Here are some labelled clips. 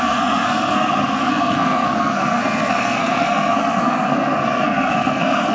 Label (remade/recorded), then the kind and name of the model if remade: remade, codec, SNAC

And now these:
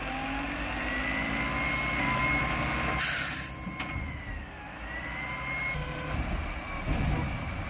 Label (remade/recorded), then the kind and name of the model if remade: recorded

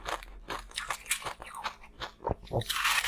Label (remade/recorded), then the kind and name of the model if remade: recorded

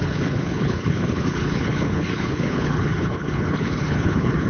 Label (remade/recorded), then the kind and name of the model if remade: remade, codec, HILCodec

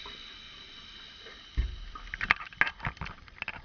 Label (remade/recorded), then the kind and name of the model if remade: recorded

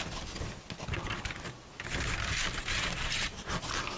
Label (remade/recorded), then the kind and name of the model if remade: recorded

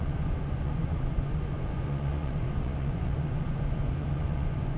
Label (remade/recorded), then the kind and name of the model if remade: remade, vocoder, Vocos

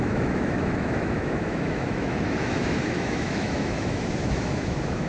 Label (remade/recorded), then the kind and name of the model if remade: remade, autoencoder, DAC-VAE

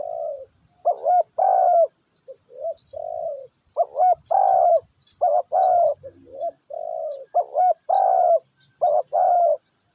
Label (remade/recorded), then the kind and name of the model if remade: recorded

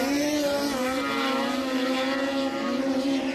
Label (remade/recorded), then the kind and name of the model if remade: remade, vocoder, BigVGAN v2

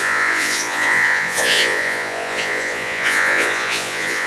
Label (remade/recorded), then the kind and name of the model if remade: remade, vocoder, Vocos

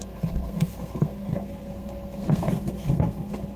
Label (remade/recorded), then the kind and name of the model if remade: remade, codec, SNAC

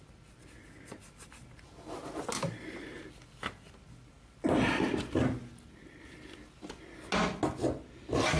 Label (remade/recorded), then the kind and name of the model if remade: recorded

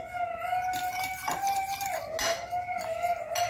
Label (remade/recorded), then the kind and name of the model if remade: recorded